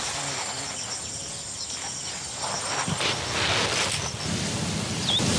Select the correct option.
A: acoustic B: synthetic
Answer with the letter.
A